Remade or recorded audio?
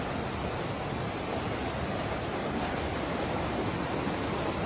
recorded